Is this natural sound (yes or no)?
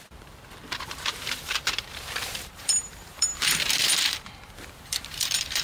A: no